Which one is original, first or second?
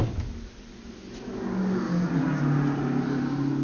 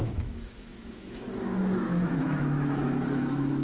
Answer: first